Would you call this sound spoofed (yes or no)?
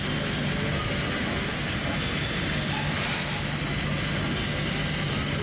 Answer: no